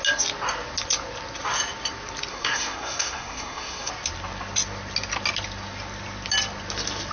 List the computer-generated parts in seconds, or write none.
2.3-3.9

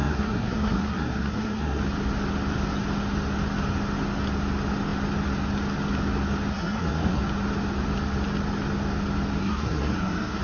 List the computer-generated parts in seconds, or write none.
0.0-1.8; 6.5-7.2; 9.4-10.4

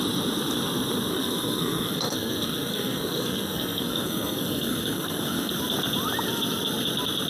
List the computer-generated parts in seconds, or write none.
1.1-5.5

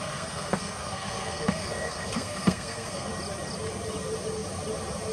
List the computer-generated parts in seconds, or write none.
0.0-3.1